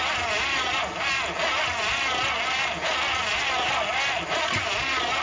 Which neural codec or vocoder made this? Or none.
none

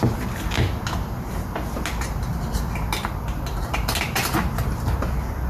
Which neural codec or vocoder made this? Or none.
none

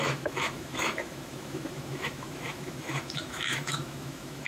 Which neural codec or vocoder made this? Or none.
autoencoder, DAC-VAE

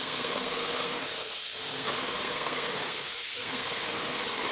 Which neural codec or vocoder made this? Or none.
codec, SNAC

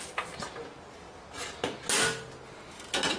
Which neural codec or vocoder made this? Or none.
none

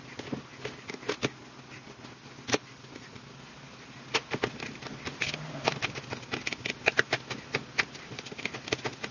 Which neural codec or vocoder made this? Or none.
none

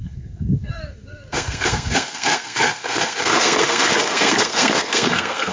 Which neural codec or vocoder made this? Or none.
codec, SNAC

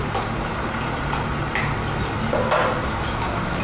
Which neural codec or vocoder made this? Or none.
none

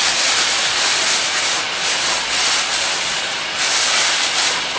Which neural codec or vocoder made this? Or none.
none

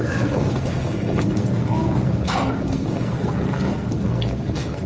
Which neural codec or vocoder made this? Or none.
codec, SNAC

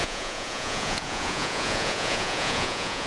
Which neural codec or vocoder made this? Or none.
vocoder, Vocos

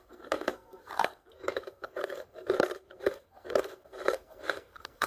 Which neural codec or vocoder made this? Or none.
codec, SNAC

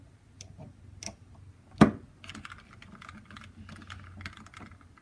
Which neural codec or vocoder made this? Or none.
none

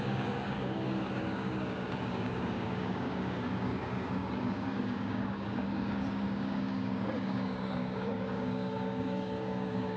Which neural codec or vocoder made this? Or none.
codec, DAC